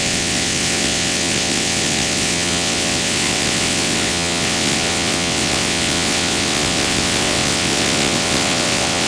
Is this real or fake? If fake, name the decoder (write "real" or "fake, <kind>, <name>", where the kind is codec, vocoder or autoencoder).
fake, vocoder, WaveNeXt